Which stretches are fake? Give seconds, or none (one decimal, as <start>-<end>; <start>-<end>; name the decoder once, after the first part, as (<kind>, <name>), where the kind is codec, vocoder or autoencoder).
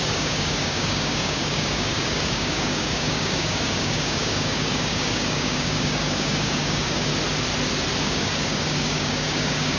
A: 0.0-7.1 (codec, DAC); 8.0-9.8